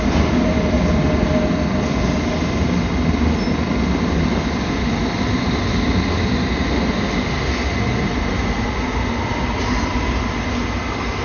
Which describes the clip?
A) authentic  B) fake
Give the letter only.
A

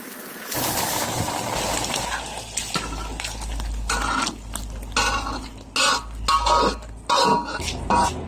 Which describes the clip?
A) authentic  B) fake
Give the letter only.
A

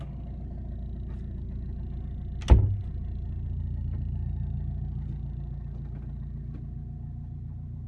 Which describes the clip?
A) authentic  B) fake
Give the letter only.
A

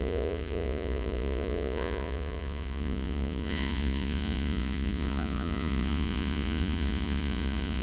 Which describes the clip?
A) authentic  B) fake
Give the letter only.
B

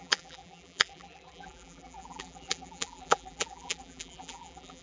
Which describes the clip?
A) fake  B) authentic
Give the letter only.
A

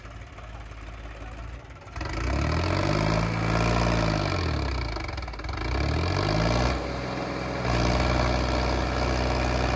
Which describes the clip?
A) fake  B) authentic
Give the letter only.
B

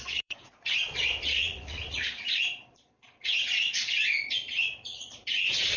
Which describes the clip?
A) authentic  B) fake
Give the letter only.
B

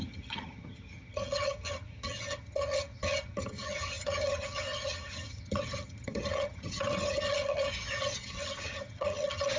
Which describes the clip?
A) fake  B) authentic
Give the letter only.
A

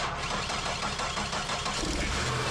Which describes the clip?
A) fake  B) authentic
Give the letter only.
B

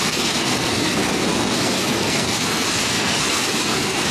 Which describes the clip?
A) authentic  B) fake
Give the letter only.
B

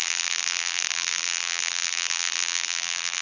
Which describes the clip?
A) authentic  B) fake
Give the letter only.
B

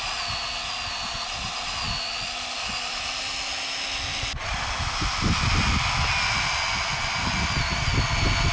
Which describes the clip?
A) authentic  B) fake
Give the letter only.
A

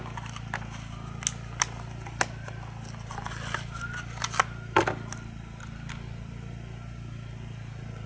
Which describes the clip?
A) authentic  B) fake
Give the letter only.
A